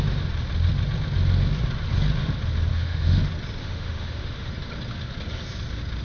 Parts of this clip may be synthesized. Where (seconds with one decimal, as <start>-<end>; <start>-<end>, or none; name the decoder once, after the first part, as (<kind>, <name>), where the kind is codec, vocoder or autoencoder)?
2.7-3.2 (autoencoder, DAC-VAE); 3.6-4.5